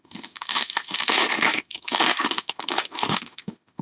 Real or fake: fake